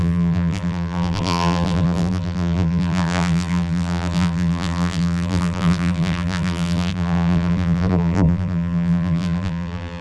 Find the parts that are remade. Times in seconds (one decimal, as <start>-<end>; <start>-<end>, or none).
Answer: 0.0-10.0